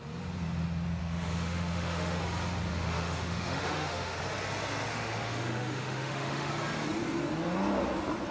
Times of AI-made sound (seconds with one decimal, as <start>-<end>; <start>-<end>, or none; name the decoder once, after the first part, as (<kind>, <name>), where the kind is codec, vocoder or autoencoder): 1.0-2.2 (autoencoder, DAC-VAE); 2.7-4.2; 4.9-6.5